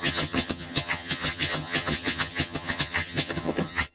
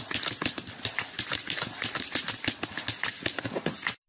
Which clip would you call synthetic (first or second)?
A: first